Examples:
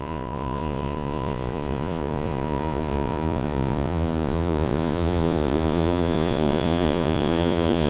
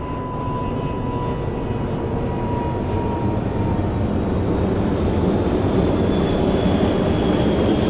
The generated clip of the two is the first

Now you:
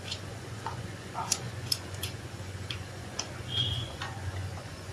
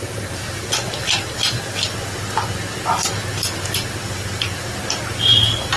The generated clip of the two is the first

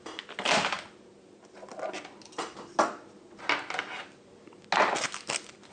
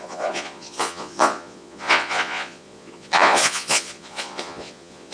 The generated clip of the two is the second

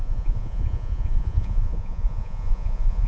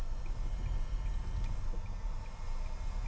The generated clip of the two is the first